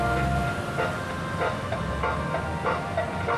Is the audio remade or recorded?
recorded